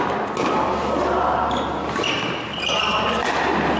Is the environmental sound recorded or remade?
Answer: recorded